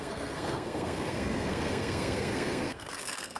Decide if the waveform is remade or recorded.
remade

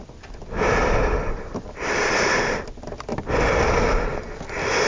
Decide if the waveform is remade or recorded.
recorded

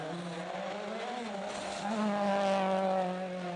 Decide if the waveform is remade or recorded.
recorded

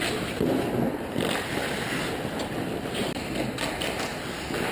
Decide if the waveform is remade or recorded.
recorded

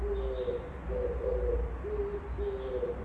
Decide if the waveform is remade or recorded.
recorded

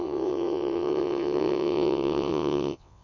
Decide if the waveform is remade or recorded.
remade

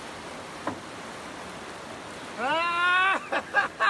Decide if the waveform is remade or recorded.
recorded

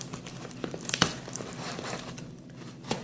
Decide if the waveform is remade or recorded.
remade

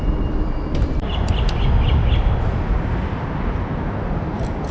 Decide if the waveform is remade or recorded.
recorded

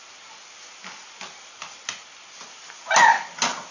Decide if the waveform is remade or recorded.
recorded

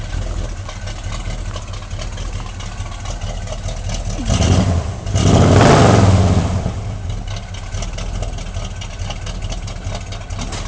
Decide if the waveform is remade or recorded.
recorded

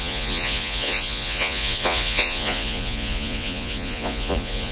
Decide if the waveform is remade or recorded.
remade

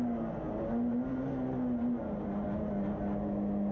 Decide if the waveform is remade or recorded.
recorded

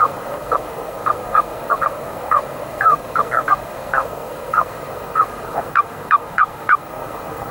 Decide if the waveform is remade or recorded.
remade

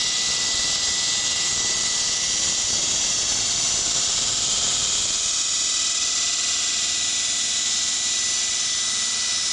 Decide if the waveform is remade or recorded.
recorded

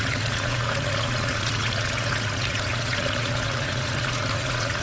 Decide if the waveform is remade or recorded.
remade